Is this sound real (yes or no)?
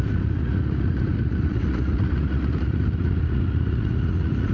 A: no